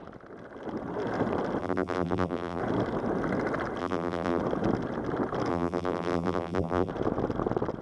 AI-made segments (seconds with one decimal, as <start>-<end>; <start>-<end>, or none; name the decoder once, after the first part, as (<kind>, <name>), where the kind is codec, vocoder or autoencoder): 1.6-2.6 (vocoder, BigVGAN v2); 3.8-4.4; 5.5-6.9